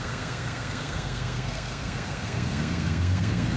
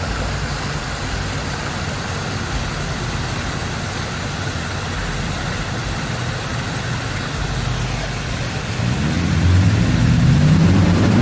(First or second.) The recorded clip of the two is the second